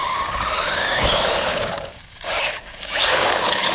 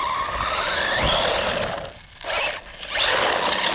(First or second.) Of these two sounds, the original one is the second